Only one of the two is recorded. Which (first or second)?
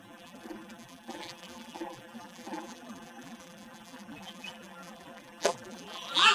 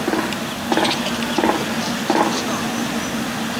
second